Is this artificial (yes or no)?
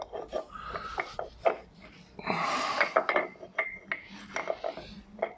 no